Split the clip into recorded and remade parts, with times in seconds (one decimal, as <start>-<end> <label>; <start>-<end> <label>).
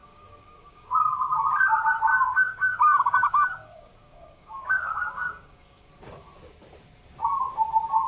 0.0-1.4 remade; 1.4-2.1 recorded; 2.1-5.9 remade; 5.9-8.1 recorded